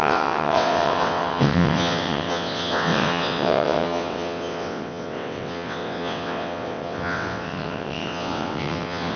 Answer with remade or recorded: remade